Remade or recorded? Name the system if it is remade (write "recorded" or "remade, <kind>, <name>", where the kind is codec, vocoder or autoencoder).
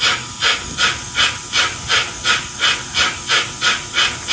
recorded